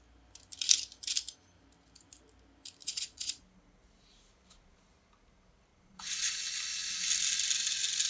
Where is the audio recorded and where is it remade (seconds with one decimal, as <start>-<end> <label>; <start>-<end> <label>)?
0.0-2.8 recorded; 2.8-3.4 remade; 3.4-5.7 recorded; 5.7-6.4 remade; 6.4-8.1 recorded

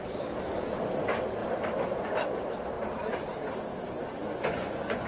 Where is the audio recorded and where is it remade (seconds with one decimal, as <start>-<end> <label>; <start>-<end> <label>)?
0.0-4.2 recorded; 4.2-5.1 remade

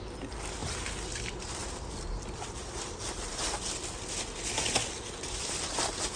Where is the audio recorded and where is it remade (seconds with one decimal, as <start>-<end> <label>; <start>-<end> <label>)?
0.0-6.2 recorded

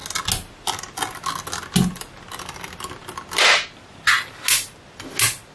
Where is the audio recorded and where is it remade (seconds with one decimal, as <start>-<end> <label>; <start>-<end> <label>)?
0.0-5.5 recorded

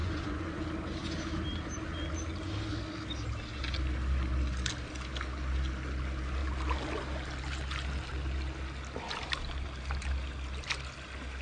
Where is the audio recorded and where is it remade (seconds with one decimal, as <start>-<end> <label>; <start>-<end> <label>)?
0.0-0.6 remade; 0.6-11.4 recorded